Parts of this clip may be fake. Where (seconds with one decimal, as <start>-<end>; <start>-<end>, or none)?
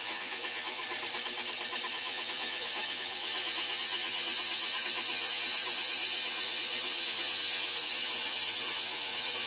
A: 0.0-0.8; 1.9-9.5